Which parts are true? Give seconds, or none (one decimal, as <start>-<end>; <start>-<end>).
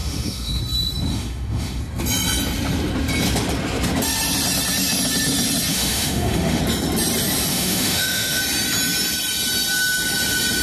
0.6-1.1; 1.8-5.7; 6.6-7.5; 8.4-10.6